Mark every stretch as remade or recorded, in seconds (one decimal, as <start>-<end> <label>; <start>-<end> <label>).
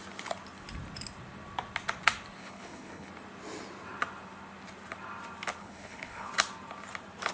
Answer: 0.0-2.4 recorded; 2.4-3.1 remade; 3.1-5.6 recorded; 5.6-6.3 remade; 6.3-7.3 recorded